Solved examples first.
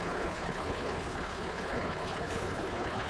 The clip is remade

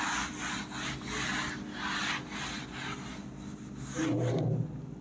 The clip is recorded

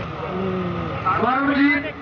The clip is recorded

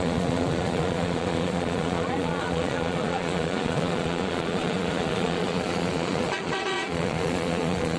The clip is remade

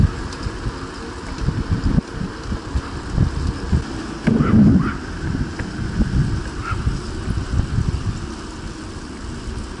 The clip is recorded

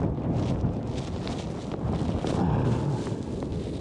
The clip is recorded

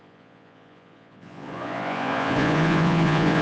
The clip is remade